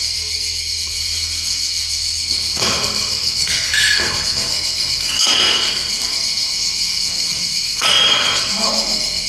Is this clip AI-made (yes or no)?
yes